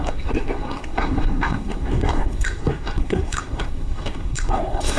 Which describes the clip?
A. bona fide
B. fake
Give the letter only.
B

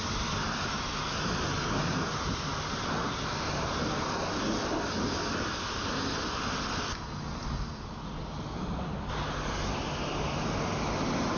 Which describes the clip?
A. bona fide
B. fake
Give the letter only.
A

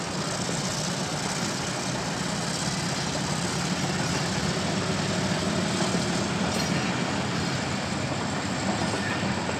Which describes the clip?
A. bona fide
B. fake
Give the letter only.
A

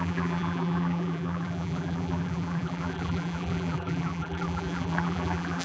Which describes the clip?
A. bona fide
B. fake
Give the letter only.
B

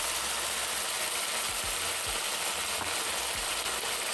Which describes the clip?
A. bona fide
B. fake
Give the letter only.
A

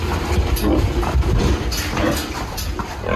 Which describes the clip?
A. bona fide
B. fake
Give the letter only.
B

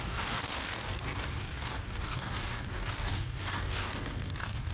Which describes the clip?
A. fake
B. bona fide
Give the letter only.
A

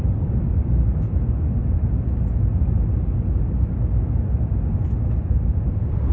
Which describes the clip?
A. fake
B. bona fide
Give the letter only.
B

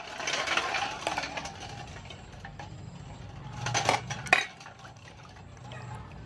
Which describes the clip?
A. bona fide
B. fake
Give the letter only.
A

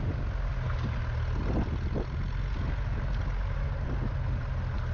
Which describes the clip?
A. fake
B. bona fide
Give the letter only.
B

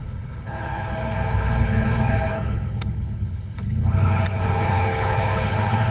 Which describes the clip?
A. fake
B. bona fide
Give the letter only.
A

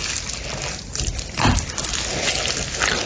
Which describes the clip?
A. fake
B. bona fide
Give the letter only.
B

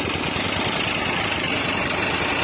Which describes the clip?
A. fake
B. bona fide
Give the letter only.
B